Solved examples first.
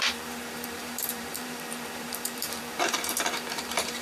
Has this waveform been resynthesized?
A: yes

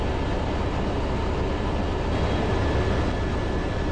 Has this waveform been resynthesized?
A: no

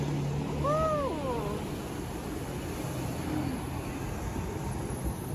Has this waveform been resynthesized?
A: no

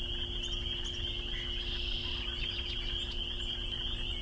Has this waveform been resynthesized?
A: no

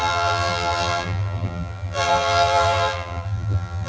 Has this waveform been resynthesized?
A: yes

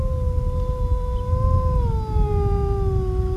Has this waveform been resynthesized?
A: no